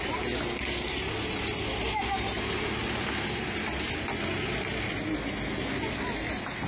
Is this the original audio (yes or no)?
yes